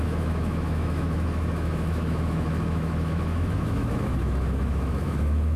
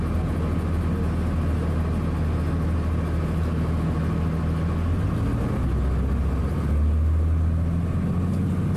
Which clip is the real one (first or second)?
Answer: second